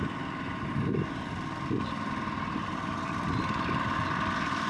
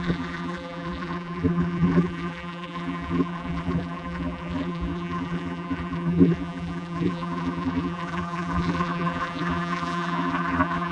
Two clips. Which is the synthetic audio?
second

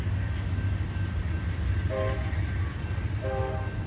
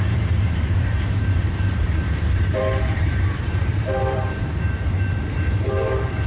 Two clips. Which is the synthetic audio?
second